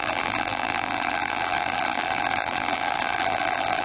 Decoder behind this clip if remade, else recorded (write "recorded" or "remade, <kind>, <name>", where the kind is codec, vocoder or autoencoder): remade, vocoder, BigVGAN v2